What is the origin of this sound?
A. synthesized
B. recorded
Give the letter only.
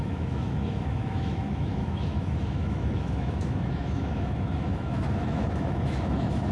A